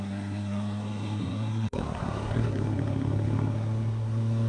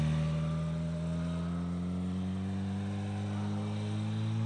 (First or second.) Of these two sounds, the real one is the second